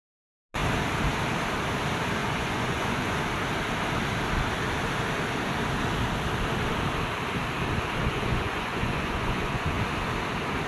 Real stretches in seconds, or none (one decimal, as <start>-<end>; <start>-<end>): 0.0-2.2; 3.2-8.0; 9.8-10.7